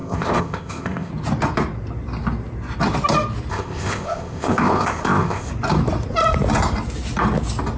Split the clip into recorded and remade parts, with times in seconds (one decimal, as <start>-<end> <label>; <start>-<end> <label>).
0.0-1.1 remade; 1.1-3.5 recorded; 3.5-5.5 remade; 5.5-7.8 recorded